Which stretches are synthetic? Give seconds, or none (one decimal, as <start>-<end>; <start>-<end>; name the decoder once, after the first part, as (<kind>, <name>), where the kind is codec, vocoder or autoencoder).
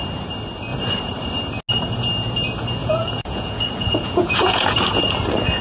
2.8-5.0 (vocoder, Vocos)